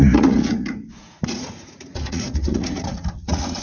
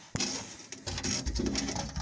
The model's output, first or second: first